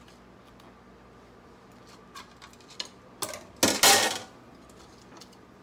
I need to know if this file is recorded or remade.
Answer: recorded